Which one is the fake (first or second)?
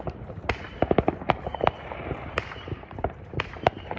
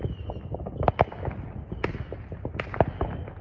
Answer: first